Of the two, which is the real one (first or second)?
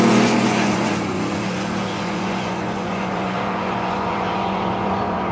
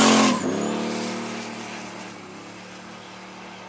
second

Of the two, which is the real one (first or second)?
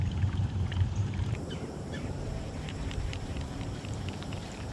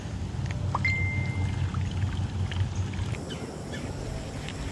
second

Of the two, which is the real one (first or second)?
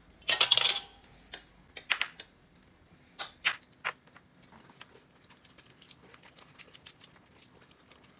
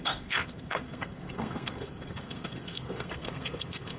first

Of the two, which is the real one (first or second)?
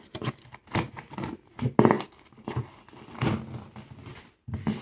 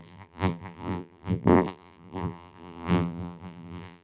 first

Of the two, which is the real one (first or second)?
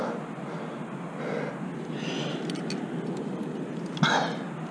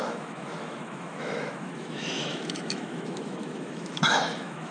first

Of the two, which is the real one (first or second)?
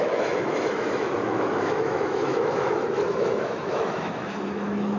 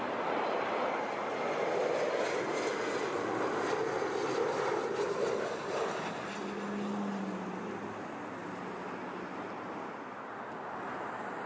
second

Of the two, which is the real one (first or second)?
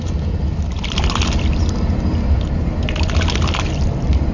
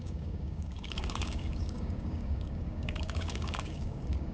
first